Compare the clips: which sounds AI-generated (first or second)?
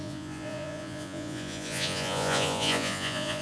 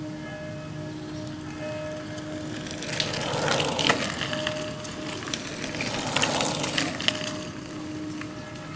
first